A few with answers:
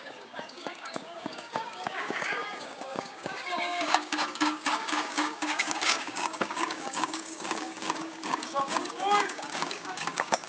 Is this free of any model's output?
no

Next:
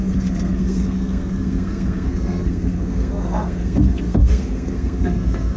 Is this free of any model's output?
no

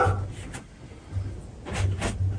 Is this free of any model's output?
yes